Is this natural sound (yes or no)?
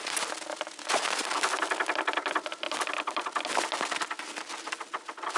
yes